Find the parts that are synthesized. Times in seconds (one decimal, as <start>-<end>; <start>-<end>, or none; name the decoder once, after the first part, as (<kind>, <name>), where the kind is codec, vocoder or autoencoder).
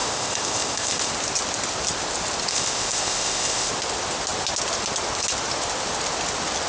0.0-1.1 (codec, ZipCodec); 2.5-3.7